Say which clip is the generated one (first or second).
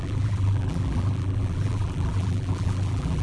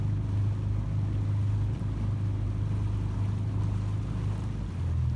first